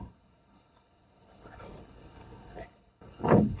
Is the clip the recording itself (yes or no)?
no